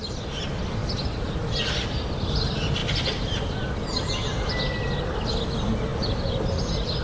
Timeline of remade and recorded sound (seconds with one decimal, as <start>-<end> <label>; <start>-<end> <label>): 0.0-7.0 recorded